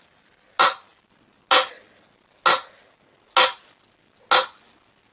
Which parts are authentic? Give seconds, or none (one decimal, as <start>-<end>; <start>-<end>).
0.0-5.1